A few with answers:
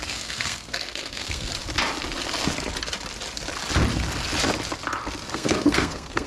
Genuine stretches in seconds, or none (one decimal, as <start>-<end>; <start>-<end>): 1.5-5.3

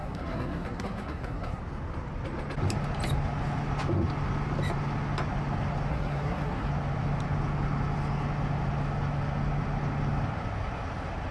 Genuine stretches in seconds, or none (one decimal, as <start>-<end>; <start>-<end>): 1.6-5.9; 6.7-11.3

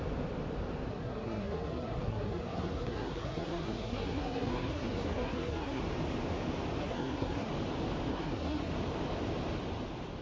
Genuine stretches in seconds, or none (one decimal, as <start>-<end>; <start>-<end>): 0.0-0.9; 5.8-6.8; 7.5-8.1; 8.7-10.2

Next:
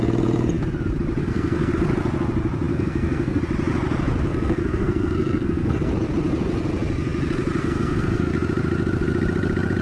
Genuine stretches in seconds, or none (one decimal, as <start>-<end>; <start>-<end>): 0.0-1.2; 1.7-2.7; 3.4-4.3; 5.9-7.6; 8.3-9.8

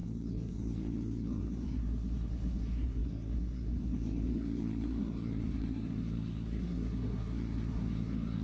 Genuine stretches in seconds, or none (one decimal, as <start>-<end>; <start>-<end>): none